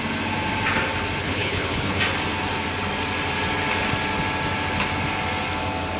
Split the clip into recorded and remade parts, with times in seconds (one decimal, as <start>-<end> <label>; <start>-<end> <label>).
0.0-1.2 recorded; 1.2-2.0 remade; 2.0-6.0 recorded